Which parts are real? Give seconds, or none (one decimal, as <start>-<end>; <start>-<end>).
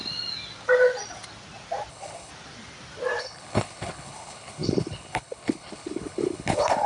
0.0-1.9; 2.3-3.2